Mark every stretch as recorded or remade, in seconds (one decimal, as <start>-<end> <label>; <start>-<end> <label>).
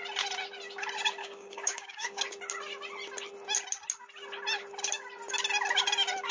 0.0-1.2 recorded; 1.2-2.2 remade; 2.2-6.3 recorded